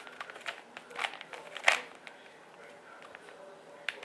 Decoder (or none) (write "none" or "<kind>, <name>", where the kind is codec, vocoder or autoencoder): none